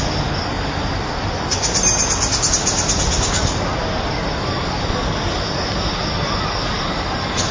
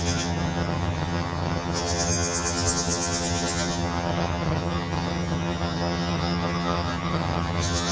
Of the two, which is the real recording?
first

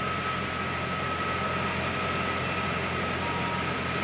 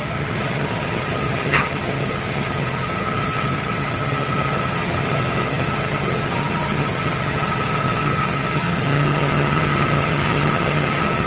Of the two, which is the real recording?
first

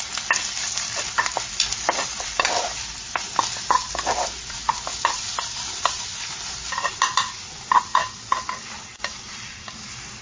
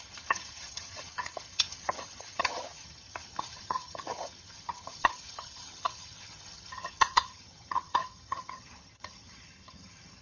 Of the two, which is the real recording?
first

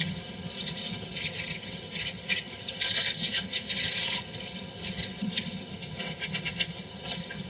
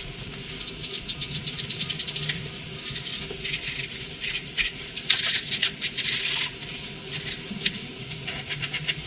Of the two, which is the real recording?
second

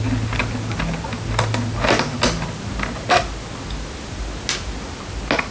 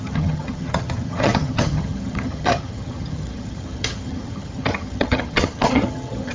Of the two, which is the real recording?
first